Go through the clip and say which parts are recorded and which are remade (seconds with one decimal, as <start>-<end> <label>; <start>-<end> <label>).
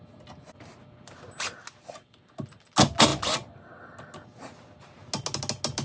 0.0-5.8 recorded